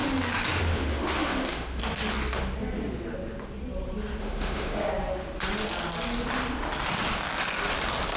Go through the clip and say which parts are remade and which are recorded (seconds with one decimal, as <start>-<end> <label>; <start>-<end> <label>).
0.0-0.6 recorded; 0.6-1.8 remade; 1.8-4.2 recorded; 4.2-4.9 remade; 4.9-8.2 recorded